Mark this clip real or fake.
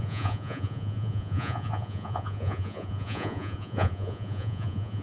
fake